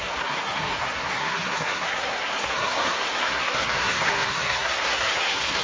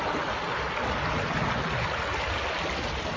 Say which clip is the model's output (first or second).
first